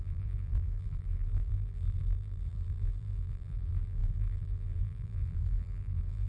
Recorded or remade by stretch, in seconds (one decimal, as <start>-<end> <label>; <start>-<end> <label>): 0.0-6.3 remade

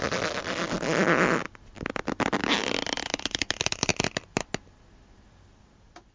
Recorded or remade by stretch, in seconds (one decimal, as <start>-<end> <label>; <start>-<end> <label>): 0.0-6.1 recorded

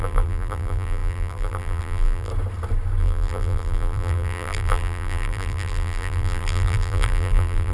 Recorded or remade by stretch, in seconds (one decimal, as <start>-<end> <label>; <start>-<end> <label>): 0.0-2.3 remade; 2.3-3.0 recorded; 3.0-7.7 remade

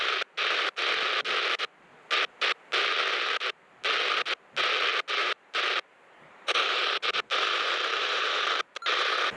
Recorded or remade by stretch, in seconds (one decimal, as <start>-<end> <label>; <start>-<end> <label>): 0.0-0.8 remade; 0.8-5.2 recorded; 5.2-9.4 remade

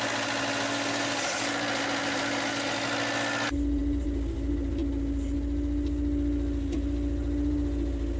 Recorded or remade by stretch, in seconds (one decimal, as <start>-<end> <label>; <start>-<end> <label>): 0.0-8.2 recorded